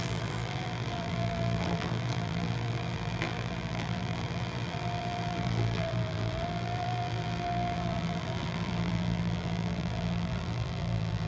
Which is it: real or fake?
fake